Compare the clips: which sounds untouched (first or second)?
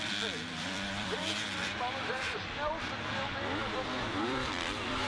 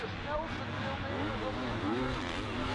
second